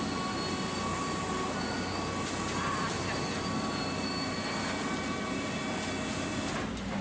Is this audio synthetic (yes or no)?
no